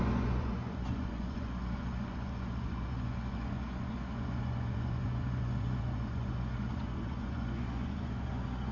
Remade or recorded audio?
remade